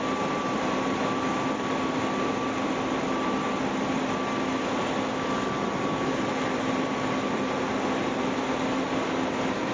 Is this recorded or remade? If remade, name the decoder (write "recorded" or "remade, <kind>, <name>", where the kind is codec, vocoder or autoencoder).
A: recorded